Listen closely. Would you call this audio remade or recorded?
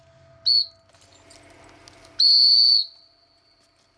recorded